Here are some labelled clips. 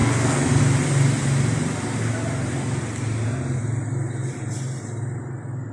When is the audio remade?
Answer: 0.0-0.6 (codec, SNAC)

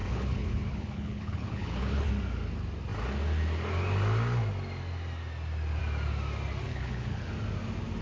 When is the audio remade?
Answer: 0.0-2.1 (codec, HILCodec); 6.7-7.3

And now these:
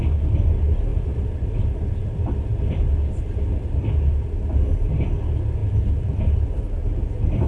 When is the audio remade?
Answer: 0.9-3.2 (vocoder, BigVGAN v2)

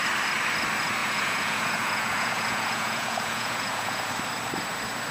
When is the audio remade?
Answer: 1.0-4.1 (vocoder, Vocos)